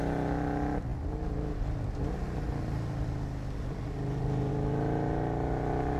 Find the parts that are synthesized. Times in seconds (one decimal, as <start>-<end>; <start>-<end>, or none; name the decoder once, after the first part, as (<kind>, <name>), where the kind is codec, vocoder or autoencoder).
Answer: none